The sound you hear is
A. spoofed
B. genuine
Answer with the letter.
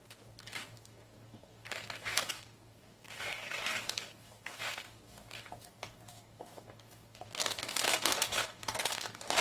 A